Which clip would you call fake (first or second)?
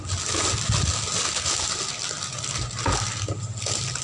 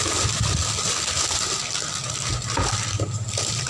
second